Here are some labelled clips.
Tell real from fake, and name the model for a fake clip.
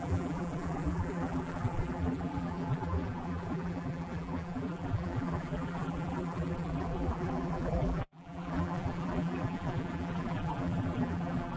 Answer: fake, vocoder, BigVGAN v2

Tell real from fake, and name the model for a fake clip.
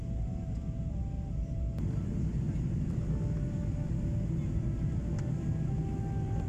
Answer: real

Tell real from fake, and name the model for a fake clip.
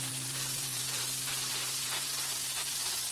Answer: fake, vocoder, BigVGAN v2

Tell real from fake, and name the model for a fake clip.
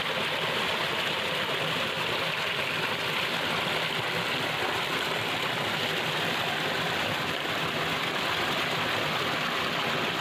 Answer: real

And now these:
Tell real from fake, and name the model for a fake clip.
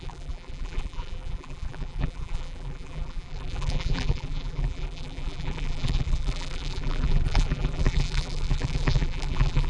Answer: fake, vocoder, BigVGAN v2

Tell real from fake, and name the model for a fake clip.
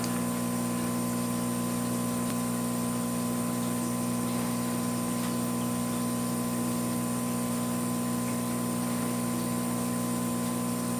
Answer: fake, vocoder, BigVGAN v2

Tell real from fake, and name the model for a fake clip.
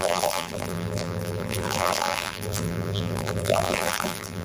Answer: fake, vocoder, BigVGAN v2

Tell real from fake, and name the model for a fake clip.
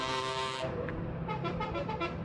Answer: fake, vocoder, BigVGAN v2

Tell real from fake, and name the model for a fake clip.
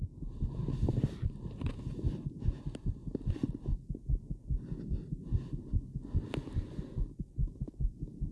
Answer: real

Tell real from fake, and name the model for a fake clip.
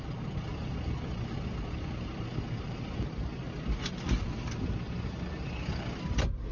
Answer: real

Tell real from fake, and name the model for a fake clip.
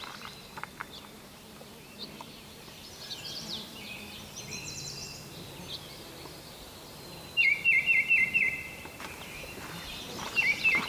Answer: fake, vocoder, BigVGAN v2